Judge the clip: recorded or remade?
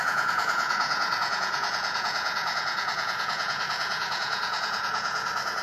remade